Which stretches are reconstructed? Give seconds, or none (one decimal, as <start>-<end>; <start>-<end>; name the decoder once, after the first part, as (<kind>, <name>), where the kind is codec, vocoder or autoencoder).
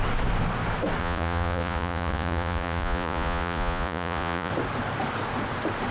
1.0-4.5 (vocoder, Vocos)